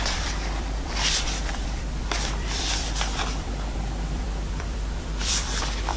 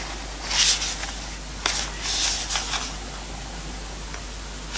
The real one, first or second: second